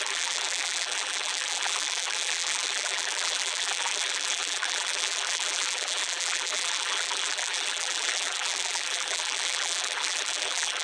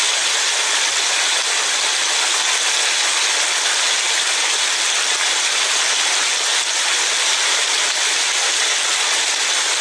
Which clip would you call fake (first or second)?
first